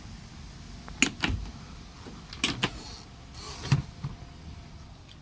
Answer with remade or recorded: recorded